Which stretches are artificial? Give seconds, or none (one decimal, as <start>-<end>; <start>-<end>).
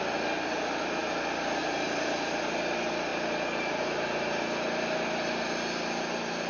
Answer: none